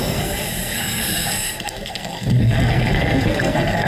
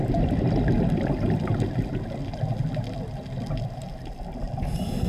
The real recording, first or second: second